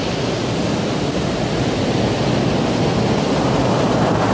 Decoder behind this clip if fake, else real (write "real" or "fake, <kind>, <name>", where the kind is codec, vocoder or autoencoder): real